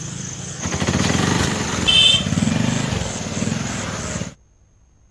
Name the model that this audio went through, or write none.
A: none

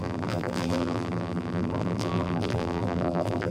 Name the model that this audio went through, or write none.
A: vocoder, BigVGAN v2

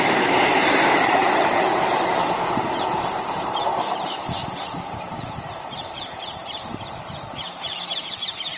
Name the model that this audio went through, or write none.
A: vocoder, BigVGAN v2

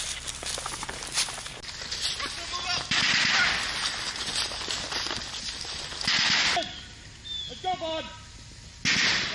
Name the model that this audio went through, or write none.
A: none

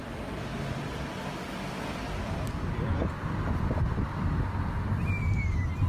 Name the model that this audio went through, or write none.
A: vocoder, BigVGAN v2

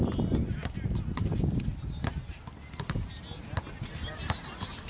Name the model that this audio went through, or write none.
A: vocoder, BigVGAN v2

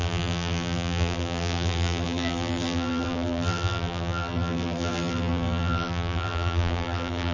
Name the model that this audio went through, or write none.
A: vocoder, BigVGAN v2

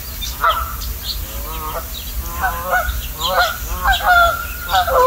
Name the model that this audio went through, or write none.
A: none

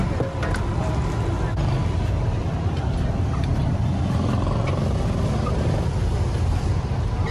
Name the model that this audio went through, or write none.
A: none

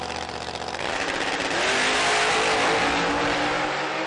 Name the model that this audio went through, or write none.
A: none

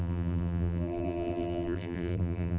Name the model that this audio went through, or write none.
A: vocoder, BigVGAN v2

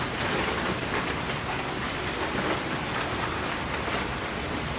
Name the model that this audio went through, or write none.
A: none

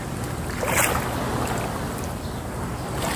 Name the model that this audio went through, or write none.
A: none